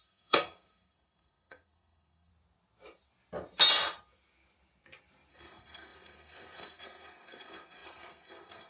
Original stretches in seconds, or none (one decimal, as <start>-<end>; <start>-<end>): 2.3-5.3